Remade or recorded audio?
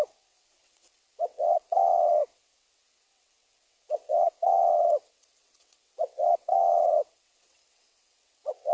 remade